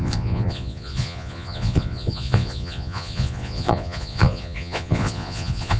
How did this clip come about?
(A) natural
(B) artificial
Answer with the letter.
B